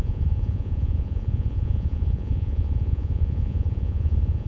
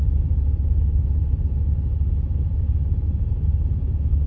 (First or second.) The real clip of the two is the second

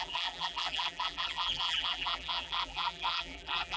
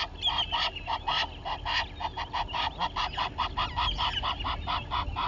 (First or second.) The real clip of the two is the second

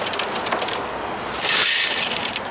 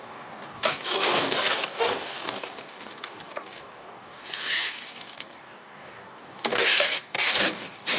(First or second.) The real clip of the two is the first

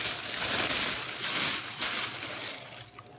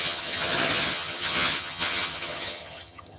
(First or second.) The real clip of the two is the first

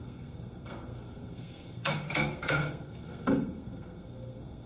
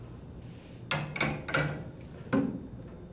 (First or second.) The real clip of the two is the second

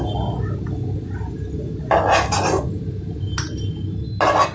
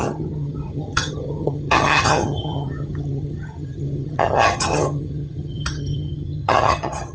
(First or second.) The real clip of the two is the first